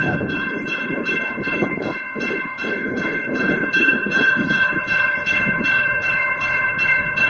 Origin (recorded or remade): remade